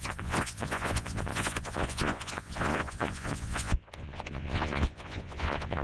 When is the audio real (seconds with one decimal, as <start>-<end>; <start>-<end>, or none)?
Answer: none